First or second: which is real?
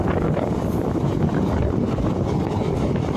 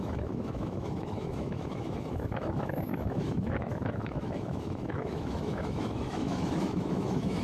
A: first